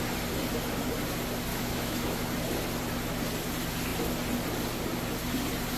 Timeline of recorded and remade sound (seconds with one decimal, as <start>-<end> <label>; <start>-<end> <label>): 0.0-1.5 recorded; 1.5-2.2 remade; 2.2-5.8 recorded